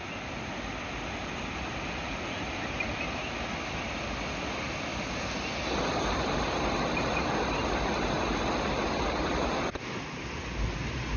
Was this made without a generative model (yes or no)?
yes